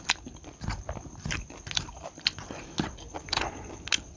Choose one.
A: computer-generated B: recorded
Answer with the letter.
B